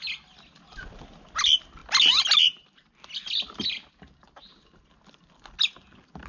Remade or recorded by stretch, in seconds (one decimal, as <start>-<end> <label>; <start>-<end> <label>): 0.0-6.3 recorded